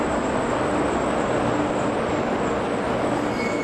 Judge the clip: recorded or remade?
recorded